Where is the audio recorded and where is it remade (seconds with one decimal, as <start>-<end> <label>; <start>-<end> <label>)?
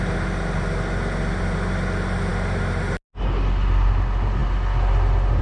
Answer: 0.0-5.4 recorded